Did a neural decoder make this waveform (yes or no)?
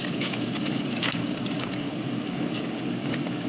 yes